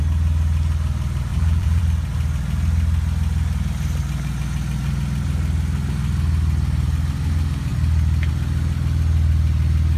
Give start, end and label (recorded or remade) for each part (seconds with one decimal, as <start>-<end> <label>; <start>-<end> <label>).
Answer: 0.0-1.3 recorded; 1.3-1.8 remade; 1.8-10.0 recorded